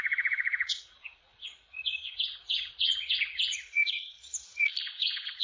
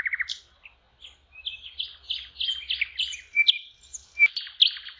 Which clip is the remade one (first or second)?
first